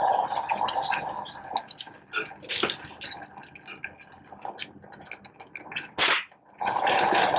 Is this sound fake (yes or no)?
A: no